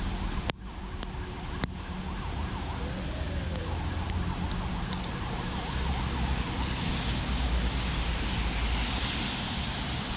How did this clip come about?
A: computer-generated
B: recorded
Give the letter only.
B